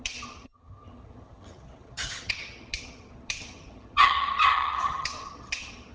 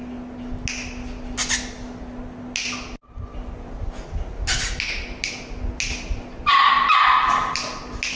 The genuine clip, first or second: second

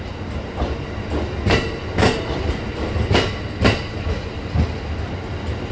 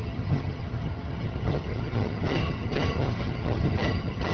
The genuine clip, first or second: first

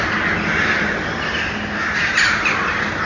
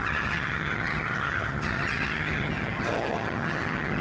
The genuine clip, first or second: first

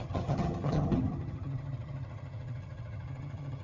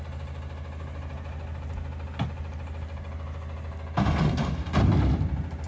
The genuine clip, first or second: second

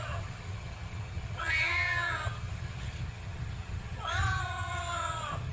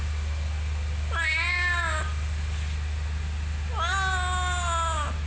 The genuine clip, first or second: second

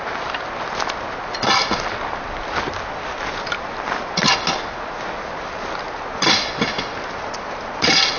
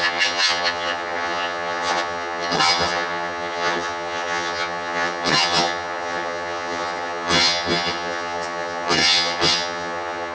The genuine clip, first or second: first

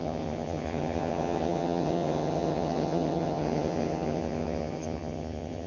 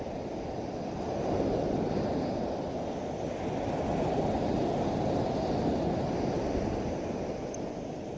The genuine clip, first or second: second